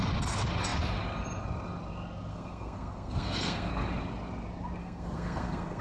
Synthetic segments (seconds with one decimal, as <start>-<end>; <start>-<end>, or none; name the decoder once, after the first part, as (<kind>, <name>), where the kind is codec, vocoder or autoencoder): 2.3-3.7 (codec, SNAC); 4.8-5.8